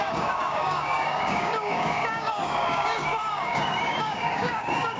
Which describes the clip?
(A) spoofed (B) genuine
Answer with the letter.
A